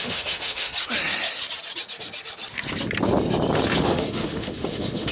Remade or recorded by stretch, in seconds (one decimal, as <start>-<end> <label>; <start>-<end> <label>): 0.0-0.7 remade; 0.7-3.8 recorded; 3.8-5.1 remade